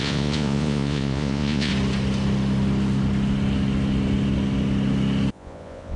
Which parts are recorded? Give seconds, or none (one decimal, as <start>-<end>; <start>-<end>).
1.7-5.3